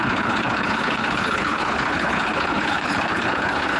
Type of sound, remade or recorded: remade